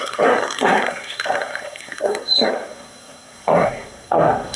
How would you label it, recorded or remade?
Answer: remade